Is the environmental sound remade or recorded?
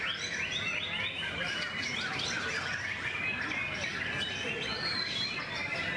recorded